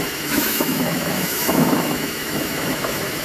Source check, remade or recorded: remade